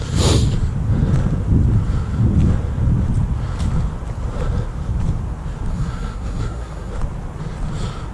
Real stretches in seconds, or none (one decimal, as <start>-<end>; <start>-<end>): 0.0-5.7; 6.9-8.1